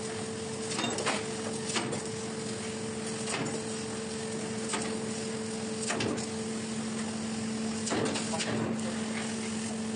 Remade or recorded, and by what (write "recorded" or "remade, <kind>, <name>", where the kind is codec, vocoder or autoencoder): recorded